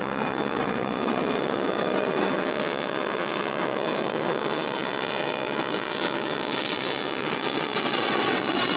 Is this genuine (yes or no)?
no